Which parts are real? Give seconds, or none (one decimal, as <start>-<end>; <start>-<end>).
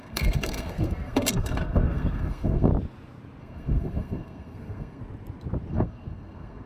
2.7-3.4; 5.0-5.7